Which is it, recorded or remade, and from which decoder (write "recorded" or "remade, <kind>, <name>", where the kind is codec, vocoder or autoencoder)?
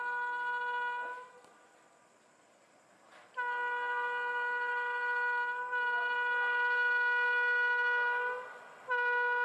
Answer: recorded